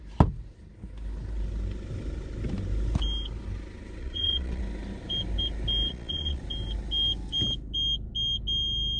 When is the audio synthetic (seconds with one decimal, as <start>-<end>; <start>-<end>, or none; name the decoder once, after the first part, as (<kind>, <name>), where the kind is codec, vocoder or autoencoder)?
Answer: 4.0-4.6 (vocoder, Vocos); 5.9-6.4